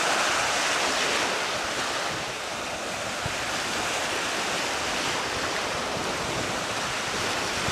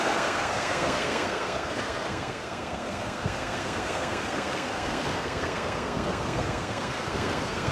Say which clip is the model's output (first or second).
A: second